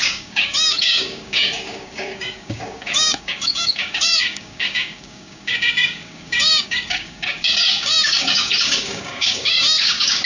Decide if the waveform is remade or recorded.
remade